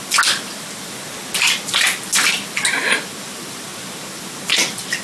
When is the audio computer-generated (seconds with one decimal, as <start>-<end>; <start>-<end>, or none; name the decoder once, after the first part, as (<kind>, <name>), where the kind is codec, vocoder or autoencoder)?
none